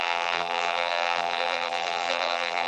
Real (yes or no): no